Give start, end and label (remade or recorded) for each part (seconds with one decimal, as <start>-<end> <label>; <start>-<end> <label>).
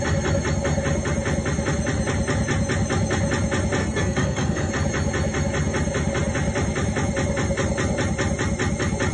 0.0-3.8 recorded; 3.8-4.7 remade; 4.7-9.1 recorded